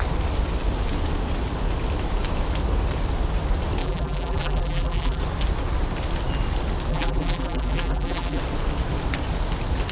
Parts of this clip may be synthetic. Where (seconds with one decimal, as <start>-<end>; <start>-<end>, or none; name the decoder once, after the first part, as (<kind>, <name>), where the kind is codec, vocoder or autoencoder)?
3.8-5.2 (vocoder, BigVGAN v2); 6.9-8.4